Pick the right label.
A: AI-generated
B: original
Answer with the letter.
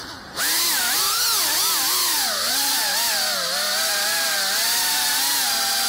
B